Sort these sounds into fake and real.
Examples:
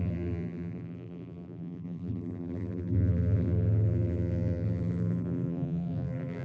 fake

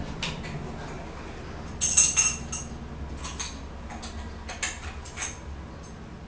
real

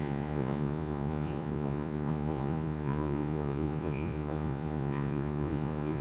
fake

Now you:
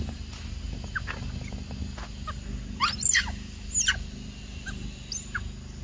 real